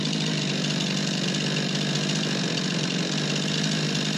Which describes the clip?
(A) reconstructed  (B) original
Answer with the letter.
B